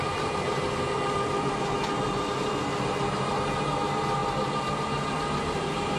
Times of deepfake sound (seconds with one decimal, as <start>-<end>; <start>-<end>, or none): none